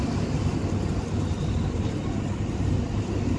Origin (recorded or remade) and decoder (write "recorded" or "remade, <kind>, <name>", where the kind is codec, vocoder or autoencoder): recorded